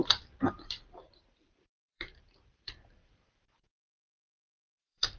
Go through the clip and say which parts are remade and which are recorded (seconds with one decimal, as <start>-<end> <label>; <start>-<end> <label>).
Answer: 0.0-5.2 remade